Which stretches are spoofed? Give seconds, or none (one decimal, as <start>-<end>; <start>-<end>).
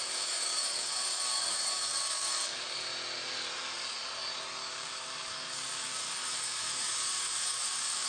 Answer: 0.0-2.9; 4.7-8.1